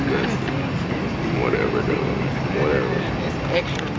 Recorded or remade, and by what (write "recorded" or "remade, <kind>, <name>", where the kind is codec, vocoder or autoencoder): recorded